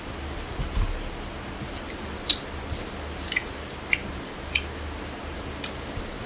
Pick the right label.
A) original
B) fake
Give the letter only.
A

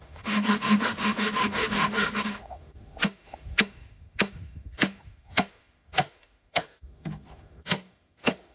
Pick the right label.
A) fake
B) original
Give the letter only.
A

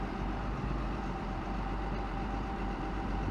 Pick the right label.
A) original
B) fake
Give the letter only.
B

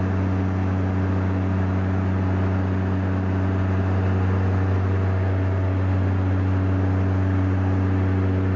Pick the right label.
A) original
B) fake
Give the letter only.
A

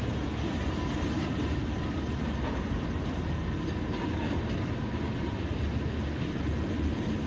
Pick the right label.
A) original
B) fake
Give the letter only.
A